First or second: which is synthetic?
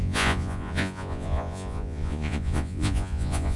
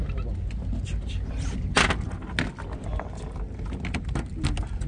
first